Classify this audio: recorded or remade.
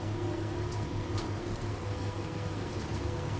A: remade